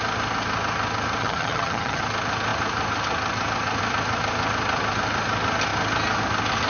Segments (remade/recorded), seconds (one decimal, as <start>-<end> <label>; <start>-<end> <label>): 0.0-1.2 recorded; 1.2-2.0 remade; 2.0-6.7 recorded